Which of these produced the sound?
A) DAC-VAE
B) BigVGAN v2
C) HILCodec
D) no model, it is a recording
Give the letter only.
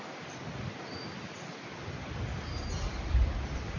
D